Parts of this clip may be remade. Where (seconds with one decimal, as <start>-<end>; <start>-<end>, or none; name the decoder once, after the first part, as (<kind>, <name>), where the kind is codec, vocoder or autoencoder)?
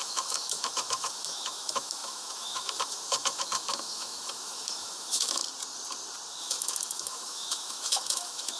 0.0-5.4 (autoencoder, DAC-VAE); 6.4-8.6